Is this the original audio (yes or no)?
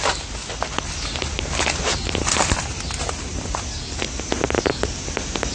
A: yes